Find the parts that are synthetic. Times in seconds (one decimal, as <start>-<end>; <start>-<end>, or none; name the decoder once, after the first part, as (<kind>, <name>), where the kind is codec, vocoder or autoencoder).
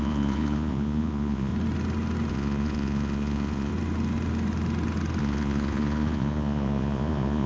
0.0-1.5 (vocoder, Vocos); 2.3-3.7; 5.2-7.5